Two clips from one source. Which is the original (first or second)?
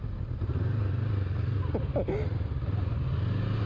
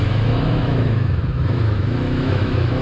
first